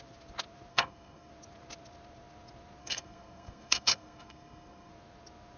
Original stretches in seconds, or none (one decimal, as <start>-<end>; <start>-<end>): 0.0-0.7; 1.3-2.8; 4.9-5.6